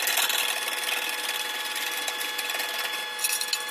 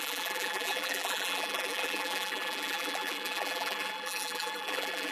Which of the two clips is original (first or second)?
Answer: first